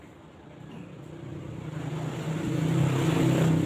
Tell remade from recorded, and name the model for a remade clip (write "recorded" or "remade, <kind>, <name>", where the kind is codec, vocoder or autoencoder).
recorded